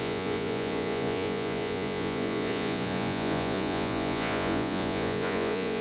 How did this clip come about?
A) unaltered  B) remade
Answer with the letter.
B